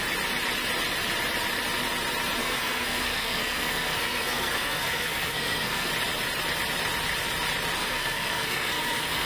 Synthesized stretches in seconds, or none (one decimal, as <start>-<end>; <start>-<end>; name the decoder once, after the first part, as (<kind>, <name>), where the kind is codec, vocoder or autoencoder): 2.4-5.9 (codec, SNAC); 7.8-9.3

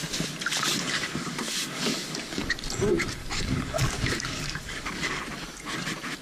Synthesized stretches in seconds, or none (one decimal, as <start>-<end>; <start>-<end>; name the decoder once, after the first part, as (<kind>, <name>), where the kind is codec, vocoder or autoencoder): 0.7-2.6 (codec, DAC); 3.2-5.2

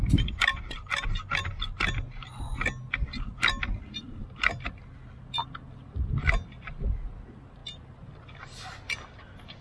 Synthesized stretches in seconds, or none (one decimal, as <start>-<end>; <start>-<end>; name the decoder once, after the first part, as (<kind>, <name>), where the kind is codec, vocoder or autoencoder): none

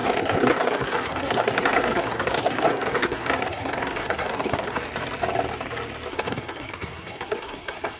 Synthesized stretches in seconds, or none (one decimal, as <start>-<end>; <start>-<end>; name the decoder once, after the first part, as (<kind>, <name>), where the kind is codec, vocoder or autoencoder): 0.0-4.8 (codec, SNAC); 6.1-8.0

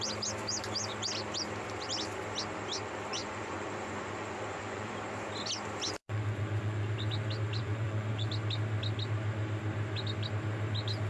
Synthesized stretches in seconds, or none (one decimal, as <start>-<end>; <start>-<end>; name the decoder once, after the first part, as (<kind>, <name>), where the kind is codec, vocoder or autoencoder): 3.1-4.9 (vocoder, Vocos); 6.0-6.9; 7.6-8.3

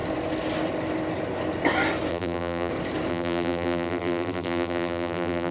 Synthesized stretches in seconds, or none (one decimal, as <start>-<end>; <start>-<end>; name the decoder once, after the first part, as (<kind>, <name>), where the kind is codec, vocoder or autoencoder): 2.1-2.7 (vocoder, BigVGAN v2); 3.1-5.5

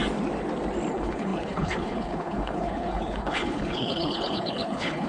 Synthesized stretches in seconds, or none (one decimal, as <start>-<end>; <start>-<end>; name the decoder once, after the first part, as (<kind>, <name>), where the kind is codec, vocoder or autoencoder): 0.9-5.1 (codec, HILCodec)